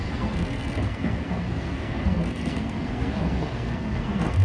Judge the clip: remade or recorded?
remade